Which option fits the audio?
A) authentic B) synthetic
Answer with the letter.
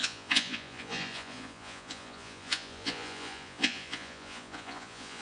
B